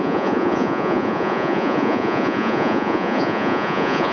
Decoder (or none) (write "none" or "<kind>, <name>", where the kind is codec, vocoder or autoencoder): vocoder, Vocos